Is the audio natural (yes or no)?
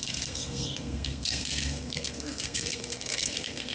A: no